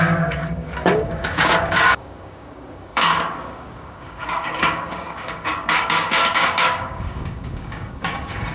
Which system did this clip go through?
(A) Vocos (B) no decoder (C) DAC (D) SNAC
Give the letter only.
C